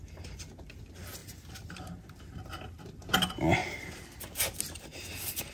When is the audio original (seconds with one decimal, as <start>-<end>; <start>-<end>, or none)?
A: 0.0-5.5